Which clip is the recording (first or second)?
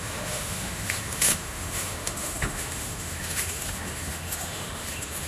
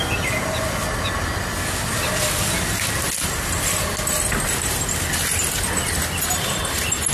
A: second